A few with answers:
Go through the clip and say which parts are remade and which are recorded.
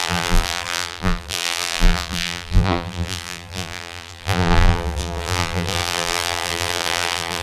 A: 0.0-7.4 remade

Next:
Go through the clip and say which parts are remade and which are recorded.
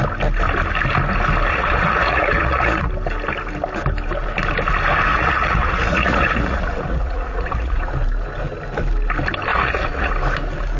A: 0.0-1.5 recorded; 1.5-2.9 remade; 2.9-5.1 recorded; 5.1-7.9 remade; 7.9-9.5 recorded; 9.5-10.1 remade; 10.1-10.8 recorded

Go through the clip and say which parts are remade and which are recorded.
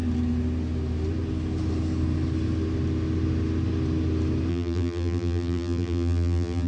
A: 0.0-4.5 recorded; 4.5-6.7 remade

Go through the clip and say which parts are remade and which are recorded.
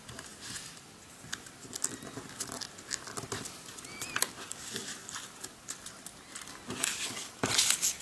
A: 0.0-5.0 recorded; 5.0-6.5 remade; 6.5-8.0 recorded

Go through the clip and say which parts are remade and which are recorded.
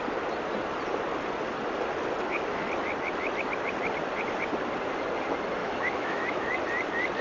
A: 0.0-5.6 recorded; 5.6-6.5 remade; 6.5-7.2 recorded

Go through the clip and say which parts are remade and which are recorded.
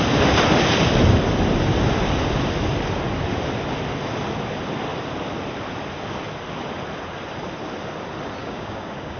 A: 0.0-8.4 recorded; 8.4-9.2 remade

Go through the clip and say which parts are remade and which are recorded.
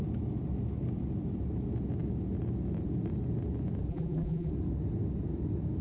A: 0.0-3.9 recorded; 3.9-4.5 remade; 4.5-5.8 recorded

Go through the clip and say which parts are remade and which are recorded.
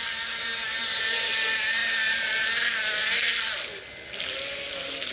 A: 0.0-5.1 recorded